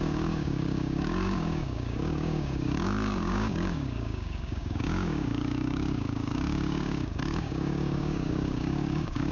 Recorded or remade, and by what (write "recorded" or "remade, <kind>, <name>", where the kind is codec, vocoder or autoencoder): remade, codec, DAC